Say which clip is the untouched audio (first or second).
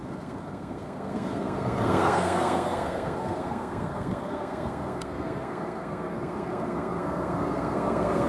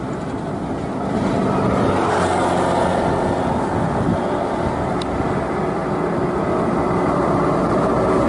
second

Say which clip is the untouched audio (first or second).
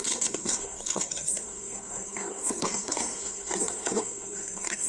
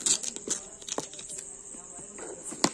second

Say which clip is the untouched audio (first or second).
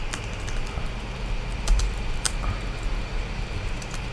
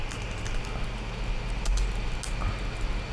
second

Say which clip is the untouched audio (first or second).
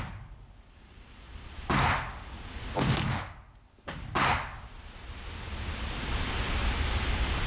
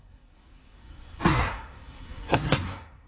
first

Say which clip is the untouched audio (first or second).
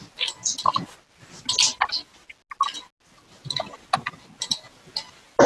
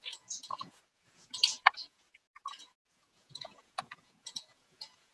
first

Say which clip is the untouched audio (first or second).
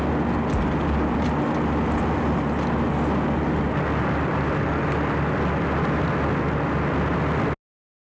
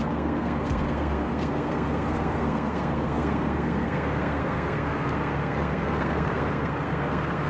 first